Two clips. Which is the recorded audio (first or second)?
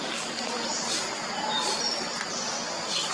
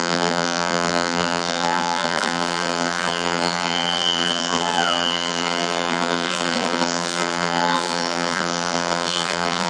first